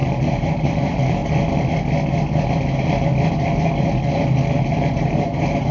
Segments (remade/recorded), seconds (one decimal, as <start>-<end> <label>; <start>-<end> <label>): 0.0-1.2 remade; 1.2-4.6 recorded; 4.6-5.7 remade